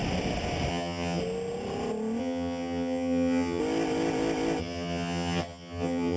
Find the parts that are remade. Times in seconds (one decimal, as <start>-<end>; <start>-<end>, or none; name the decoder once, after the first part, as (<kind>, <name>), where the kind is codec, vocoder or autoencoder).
0.7-1.2 (vocoder, HiFi-GAN); 2.2-3.6; 4.6-6.2